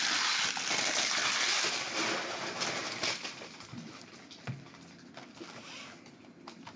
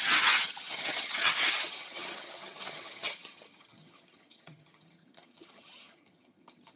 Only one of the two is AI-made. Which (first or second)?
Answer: second